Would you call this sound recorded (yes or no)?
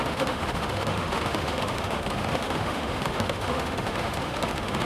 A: no